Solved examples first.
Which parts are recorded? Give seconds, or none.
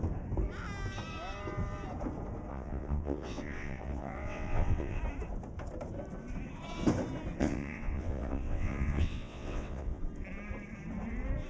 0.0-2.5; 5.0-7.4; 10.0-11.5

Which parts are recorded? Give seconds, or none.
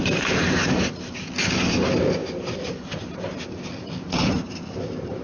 0.0-5.2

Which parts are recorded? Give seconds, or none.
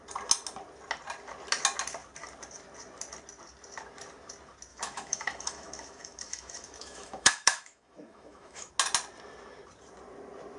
0.0-4.7; 8.7-10.6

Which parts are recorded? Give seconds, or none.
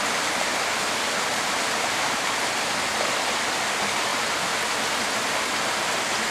0.0-6.3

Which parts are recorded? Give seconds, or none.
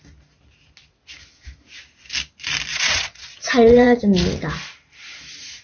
0.0-2.7; 4.0-5.6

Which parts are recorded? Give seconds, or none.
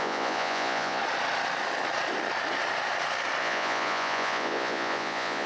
1.0-3.4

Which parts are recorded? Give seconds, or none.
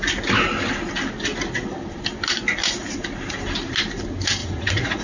0.0-4.4